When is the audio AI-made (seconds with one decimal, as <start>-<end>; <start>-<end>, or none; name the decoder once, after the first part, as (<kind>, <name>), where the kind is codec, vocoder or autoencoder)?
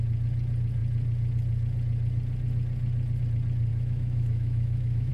3.7-5.1 (autoencoder, DAC-VAE)